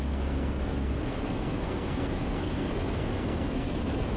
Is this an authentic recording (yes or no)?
no